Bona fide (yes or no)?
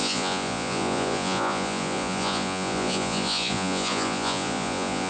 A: no